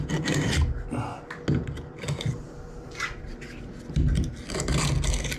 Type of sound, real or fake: real